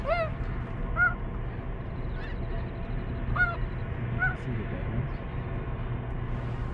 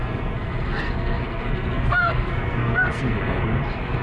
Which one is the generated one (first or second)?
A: second